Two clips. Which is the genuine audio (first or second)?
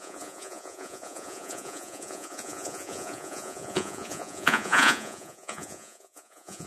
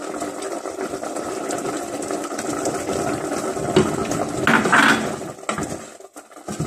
second